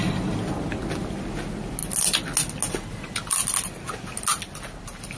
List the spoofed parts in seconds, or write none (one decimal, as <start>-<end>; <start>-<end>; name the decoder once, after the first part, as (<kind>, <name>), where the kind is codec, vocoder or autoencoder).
none